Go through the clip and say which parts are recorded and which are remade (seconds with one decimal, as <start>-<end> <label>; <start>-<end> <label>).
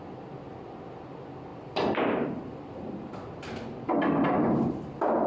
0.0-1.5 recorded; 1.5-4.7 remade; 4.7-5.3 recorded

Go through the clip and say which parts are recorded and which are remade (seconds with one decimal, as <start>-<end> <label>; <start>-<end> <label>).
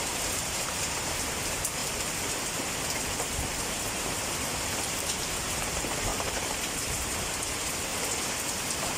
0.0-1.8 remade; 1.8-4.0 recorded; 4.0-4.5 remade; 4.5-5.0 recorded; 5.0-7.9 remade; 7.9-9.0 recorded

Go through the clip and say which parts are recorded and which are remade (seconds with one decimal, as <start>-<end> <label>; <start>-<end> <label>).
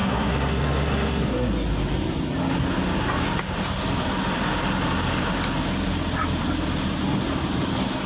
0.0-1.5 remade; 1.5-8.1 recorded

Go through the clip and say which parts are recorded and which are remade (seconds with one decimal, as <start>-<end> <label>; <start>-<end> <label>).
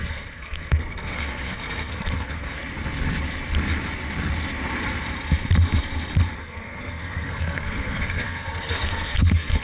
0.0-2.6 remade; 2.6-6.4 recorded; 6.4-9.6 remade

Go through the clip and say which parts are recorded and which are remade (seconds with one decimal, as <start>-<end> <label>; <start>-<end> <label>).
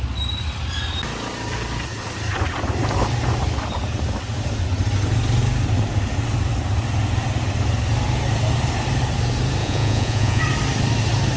0.0-9.6 recorded; 9.6-10.4 remade; 10.4-11.4 recorded